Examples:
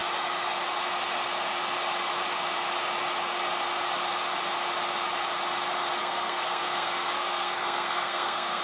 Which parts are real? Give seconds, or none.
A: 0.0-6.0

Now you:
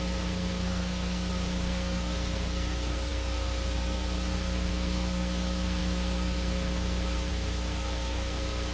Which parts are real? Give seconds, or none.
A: none

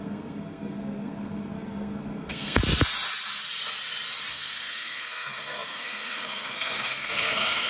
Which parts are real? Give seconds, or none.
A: 2.6-4.3

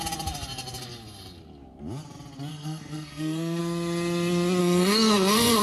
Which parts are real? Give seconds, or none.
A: 0.0-2.5; 3.6-4.6

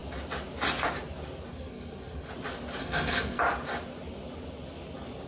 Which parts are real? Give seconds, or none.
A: 0.0-1.5; 2.3-2.8; 3.4-5.3

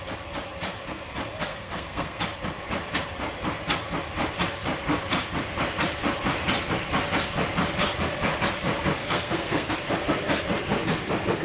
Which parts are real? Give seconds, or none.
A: 0.0-1.5; 2.2-9.0; 9.7-11.4

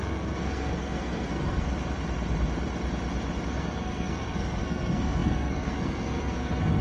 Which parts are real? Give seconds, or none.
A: 1.7-3.5

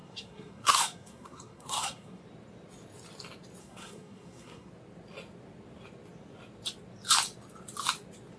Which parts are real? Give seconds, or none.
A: 2.2-3.6; 4.7-8.4